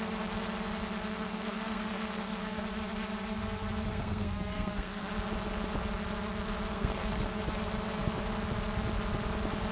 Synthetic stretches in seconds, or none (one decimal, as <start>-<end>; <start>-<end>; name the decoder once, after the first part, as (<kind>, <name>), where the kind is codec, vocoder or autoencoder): 1.1-2.6 (codec, SNAC); 3.9-5.1; 6.7-7.4